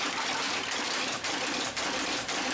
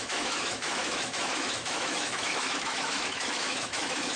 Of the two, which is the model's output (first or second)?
second